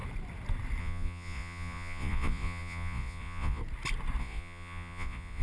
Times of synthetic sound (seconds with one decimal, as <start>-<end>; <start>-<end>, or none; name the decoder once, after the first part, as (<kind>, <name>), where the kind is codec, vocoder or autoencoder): 0.8-3.6 (vocoder, Vocos); 4.2-5.4